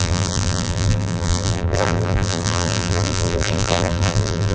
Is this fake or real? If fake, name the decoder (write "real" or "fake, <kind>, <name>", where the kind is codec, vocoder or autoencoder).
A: fake, vocoder, BigVGAN v2